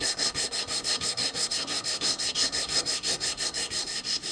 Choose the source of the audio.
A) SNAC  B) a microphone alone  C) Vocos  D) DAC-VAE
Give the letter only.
A